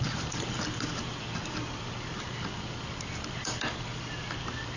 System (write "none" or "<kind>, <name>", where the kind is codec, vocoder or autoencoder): none